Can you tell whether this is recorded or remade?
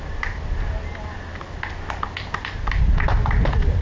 recorded